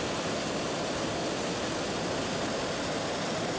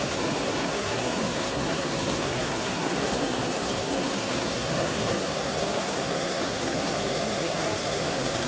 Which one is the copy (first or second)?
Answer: second